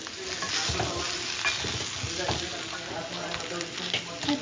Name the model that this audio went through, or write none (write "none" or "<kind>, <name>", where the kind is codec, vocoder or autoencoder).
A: none